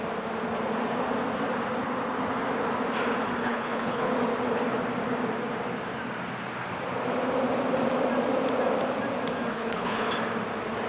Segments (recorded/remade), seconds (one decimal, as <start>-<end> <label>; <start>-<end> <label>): 0.0-3.4 recorded; 3.4-4.1 remade; 4.1-9.5 recorded; 9.5-10.1 remade; 10.1-10.9 recorded